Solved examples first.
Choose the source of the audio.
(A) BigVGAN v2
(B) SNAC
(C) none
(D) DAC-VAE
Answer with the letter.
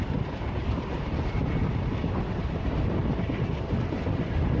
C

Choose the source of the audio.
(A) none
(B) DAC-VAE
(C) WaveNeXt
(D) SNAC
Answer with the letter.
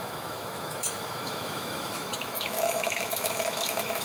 B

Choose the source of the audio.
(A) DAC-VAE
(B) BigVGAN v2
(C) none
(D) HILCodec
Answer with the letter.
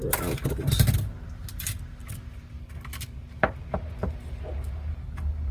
C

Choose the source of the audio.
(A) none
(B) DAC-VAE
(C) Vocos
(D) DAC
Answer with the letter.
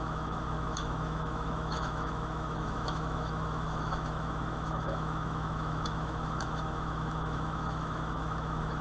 B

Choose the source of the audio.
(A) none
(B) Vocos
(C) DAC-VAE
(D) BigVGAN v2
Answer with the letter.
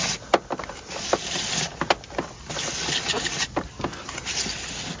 A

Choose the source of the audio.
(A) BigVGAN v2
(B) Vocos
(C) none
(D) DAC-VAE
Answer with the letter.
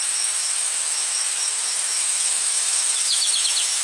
D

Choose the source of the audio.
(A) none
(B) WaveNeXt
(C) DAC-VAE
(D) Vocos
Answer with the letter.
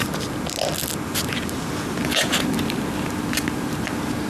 A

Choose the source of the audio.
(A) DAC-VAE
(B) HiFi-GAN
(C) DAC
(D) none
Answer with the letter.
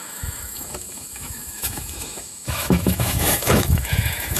A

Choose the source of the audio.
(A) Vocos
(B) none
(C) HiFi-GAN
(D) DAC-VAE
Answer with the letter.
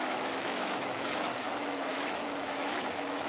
D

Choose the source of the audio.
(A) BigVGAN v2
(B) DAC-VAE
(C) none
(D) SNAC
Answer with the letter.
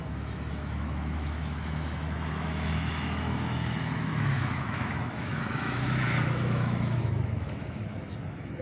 B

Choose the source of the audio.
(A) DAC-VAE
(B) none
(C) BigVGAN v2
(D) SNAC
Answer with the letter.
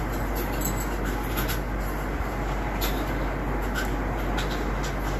B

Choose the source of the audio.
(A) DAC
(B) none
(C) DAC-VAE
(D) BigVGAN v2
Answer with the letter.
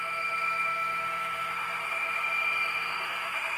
C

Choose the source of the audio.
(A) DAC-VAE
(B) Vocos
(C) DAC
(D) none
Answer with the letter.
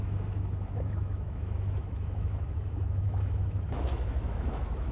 A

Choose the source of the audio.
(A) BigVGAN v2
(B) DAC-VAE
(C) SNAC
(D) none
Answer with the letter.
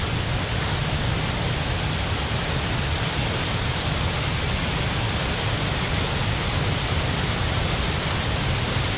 D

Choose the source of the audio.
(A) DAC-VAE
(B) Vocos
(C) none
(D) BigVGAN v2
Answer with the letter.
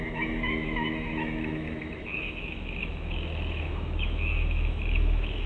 A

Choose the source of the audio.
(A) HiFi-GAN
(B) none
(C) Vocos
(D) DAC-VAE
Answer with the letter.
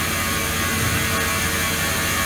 B